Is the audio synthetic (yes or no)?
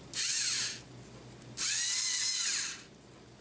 no